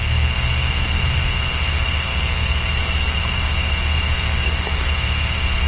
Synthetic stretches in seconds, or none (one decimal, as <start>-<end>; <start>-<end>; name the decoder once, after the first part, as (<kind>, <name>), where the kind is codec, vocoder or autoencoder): 2.1-3.2 (codec, DAC); 4.3-4.9

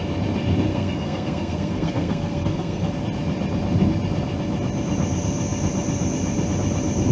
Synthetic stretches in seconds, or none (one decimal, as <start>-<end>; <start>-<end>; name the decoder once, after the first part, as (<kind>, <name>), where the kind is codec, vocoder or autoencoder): 0.7-2.9 (codec, SNAC)

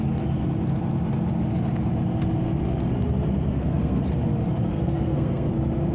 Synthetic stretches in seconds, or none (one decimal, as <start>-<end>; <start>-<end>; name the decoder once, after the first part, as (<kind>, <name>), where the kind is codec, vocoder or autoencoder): 3.5-4.0 (codec, SNAC); 4.7-5.5